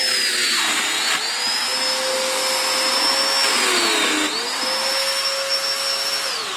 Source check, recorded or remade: recorded